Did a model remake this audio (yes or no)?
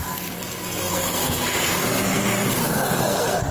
yes